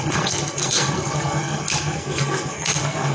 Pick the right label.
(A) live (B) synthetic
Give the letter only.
B